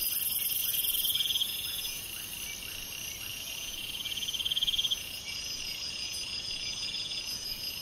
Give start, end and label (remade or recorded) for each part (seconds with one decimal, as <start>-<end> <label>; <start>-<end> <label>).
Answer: 0.0-0.6 recorded; 0.6-2.0 remade; 2.0-3.3 recorded; 3.3-7.8 remade